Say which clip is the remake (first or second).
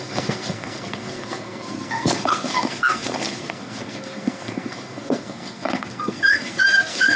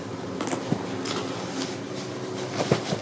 first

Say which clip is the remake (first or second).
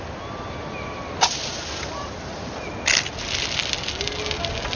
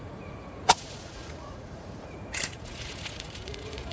second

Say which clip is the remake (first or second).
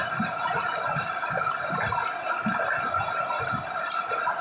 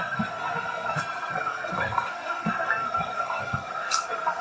second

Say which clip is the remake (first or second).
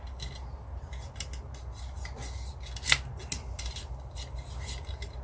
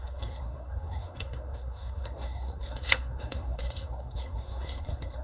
second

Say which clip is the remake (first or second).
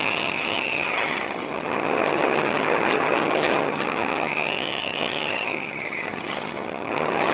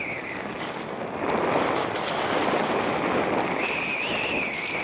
first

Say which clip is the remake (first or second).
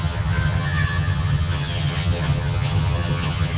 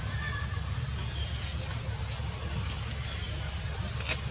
first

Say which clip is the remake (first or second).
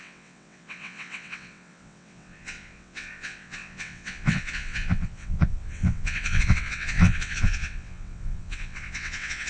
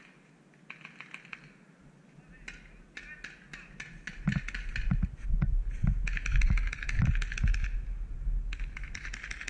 first